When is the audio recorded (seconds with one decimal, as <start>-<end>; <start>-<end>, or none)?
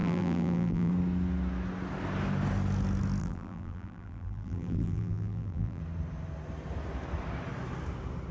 0.9-3.2; 5.8-8.3